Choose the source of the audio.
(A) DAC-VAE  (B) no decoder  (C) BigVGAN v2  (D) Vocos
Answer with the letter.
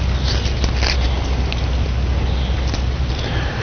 C